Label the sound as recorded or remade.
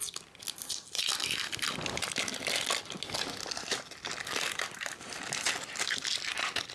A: recorded